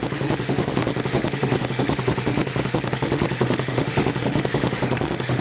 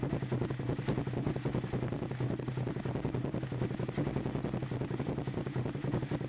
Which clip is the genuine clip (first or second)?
second